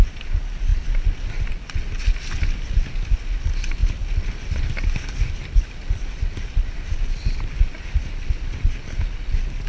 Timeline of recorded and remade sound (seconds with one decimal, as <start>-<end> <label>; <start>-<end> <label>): 0.0-9.7 recorded